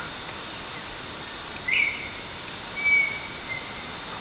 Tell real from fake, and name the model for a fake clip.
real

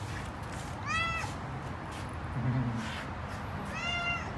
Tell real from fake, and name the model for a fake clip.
real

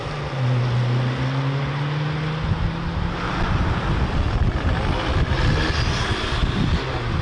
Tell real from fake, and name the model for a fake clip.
real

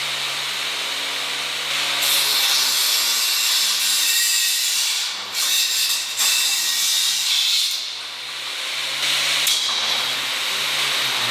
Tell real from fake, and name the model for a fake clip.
real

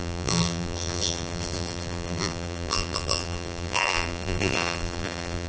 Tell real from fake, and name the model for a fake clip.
fake, vocoder, BigVGAN v2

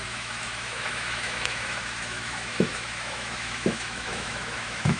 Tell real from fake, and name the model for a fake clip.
fake, autoencoder, DAC-VAE